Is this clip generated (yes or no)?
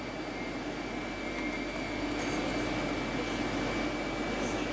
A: no